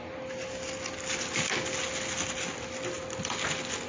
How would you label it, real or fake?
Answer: real